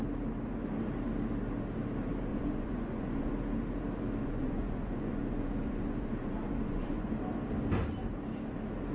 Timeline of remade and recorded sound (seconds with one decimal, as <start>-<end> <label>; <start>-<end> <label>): 0.0-2.3 recorded; 2.3-3.3 remade; 3.3-4.2 recorded; 4.2-7.1 remade; 7.1-8.9 recorded